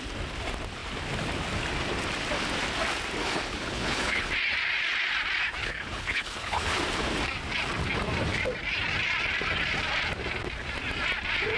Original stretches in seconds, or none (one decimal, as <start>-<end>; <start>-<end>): 0.0-3.2; 4.3-5.6; 6.8-11.6